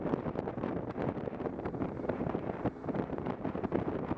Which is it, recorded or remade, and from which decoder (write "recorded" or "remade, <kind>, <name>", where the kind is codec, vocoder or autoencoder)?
recorded